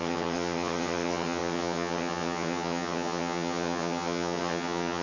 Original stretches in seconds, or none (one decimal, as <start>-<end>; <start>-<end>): none